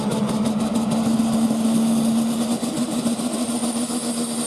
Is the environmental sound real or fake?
real